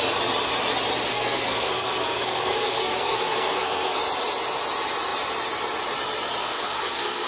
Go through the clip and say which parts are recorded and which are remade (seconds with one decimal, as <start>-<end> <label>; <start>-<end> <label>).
0.0-1.1 recorded; 1.1-4.0 remade; 4.0-6.4 recorded; 6.4-7.3 remade